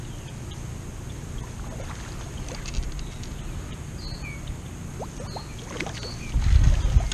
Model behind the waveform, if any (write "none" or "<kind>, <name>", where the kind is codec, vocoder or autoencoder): none